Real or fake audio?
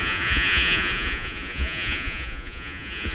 fake